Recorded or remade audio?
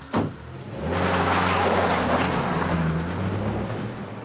recorded